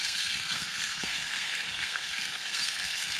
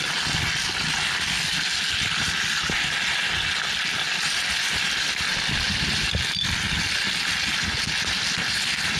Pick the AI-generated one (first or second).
first